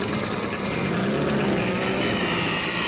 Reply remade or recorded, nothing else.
recorded